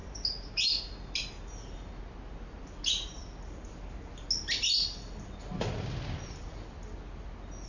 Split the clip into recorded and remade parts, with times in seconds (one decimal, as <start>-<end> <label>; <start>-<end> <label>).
0.0-7.7 recorded